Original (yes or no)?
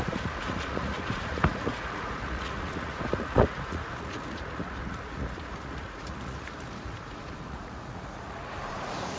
no